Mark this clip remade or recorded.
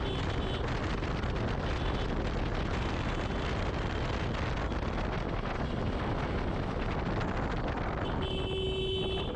recorded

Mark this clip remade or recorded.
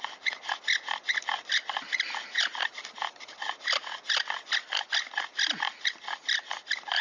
recorded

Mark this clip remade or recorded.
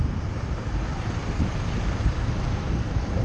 remade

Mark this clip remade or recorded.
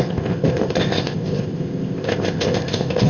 remade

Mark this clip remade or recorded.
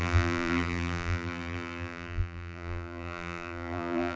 remade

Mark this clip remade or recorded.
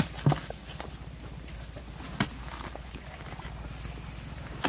recorded